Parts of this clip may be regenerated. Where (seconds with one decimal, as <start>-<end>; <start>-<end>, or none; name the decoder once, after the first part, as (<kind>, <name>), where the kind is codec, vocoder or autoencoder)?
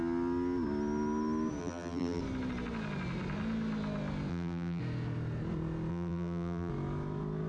1.6-2.2 (vocoder, BigVGAN v2); 4.3-4.8; 5.9-6.7